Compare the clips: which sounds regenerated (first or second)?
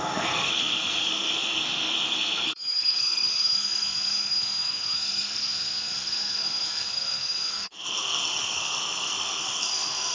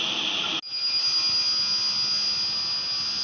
first